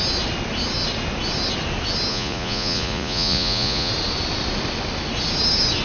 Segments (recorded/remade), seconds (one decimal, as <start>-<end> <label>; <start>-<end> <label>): 0.0-2.1 recorded; 2.1-3.9 remade; 3.9-5.8 recorded